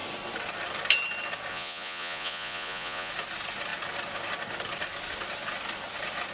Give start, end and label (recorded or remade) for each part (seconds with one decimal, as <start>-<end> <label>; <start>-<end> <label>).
0.0-1.5 recorded; 1.5-3.1 remade; 3.1-6.3 recorded